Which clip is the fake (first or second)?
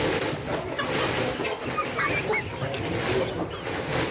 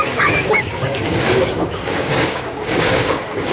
second